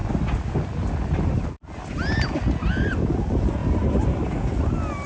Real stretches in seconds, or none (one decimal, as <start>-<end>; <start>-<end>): 0.0-3.6; 4.3-5.1